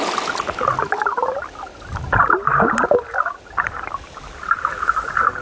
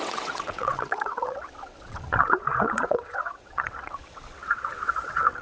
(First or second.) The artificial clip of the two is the second